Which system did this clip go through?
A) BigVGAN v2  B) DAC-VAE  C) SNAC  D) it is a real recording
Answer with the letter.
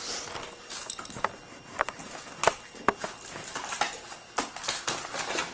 D